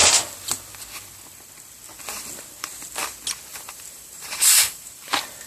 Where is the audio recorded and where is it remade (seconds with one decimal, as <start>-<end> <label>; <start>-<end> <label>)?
0.0-3.5 recorded; 3.5-5.1 remade; 5.1-5.5 recorded